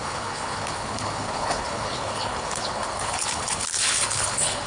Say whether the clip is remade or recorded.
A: remade